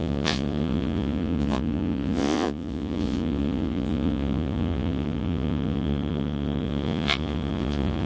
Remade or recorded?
remade